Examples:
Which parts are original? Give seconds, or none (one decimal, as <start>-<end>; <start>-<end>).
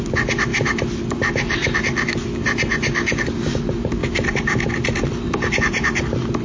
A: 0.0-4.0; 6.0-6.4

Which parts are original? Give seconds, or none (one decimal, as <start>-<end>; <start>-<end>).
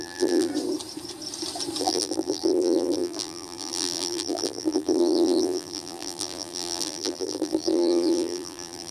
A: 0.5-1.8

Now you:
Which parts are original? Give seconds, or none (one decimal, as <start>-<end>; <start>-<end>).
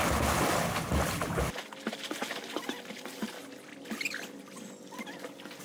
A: 0.0-5.6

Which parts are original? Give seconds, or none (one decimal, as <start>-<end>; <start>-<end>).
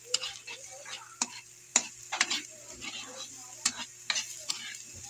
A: 0.0-1.7; 4.5-5.1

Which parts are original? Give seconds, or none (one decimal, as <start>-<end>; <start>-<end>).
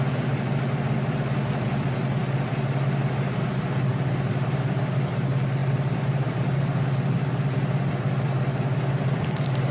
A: 0.0-9.7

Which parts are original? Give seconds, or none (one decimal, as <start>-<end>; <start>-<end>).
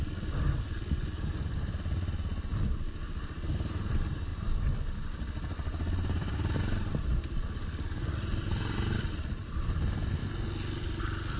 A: 2.3-3.5; 4.3-8.0; 10.2-11.0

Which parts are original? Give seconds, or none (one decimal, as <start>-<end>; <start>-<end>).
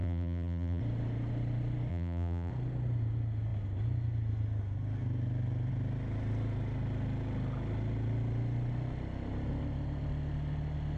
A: 0.8-1.9; 2.5-11.0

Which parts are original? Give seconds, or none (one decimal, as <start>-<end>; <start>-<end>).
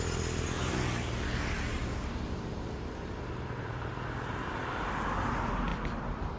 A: 0.0-1.7; 4.5-5.7